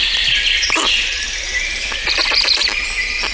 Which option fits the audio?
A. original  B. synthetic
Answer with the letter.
A